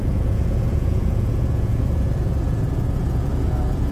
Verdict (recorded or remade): remade